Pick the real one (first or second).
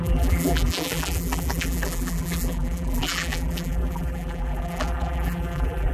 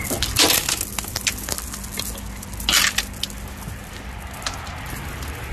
second